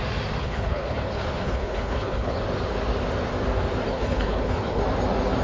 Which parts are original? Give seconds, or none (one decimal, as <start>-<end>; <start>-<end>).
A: 0.0-0.4; 2.4-3.9; 4.8-5.4

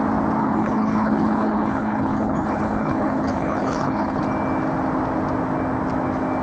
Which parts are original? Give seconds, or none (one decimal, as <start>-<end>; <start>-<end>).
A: 0.0-0.4; 4.2-6.4

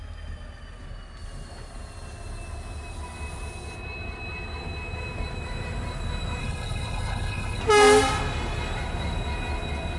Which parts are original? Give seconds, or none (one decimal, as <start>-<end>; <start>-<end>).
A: 0.0-6.4; 7.6-10.0

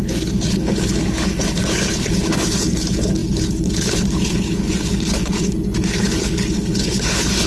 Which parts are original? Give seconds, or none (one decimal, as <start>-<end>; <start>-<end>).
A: none

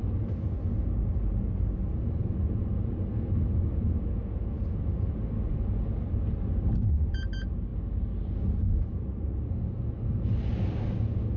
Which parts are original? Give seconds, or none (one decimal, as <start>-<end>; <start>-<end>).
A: 0.0-11.4

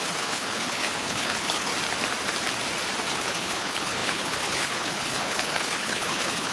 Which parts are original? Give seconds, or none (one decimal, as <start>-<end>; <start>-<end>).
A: 1.7-3.1